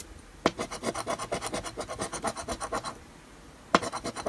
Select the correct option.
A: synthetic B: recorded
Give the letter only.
B